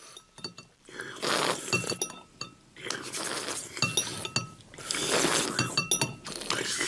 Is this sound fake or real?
real